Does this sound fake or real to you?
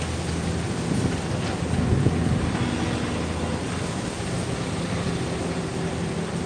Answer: real